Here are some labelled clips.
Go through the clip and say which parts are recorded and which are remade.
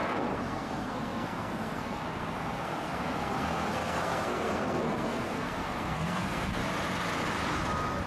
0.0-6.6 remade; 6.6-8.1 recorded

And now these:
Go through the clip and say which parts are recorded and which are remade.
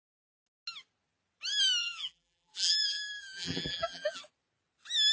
0.0-1.8 recorded; 1.8-4.2 remade; 4.2-5.1 recorded